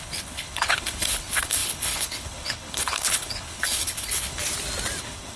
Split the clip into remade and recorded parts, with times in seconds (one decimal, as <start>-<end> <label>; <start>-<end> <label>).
0.0-4.4 remade; 4.4-5.0 recorded; 5.0-5.4 remade